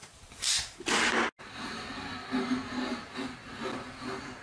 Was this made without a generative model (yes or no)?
yes